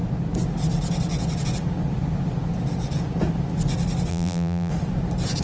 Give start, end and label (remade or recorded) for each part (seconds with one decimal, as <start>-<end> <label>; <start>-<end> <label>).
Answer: 0.0-4.1 recorded; 4.1-4.7 remade; 4.7-5.4 recorded